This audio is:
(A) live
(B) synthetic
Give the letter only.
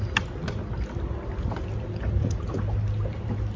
A